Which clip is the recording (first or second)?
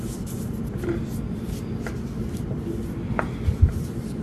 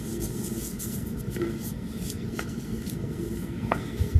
first